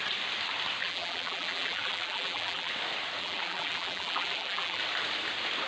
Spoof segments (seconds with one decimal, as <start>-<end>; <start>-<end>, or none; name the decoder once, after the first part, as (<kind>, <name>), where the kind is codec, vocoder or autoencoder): 0.8-2.7 (vocoder, BigVGAN v2); 3.2-4.8